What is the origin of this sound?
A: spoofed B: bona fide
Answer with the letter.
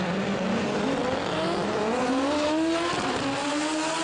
B